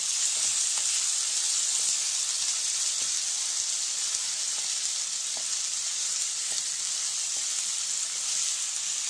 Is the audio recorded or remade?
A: recorded